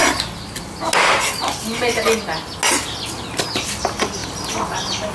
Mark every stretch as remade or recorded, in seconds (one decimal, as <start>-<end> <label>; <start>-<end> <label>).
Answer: 0.0-5.1 recorded